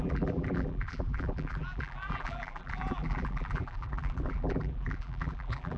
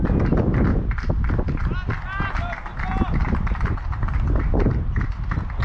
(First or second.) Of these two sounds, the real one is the second